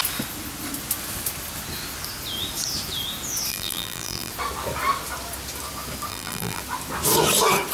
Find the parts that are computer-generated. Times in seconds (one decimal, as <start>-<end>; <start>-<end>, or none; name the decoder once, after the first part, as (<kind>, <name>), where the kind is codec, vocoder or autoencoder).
3.5-4.3 (vocoder, BigVGAN v2); 6.1-6.6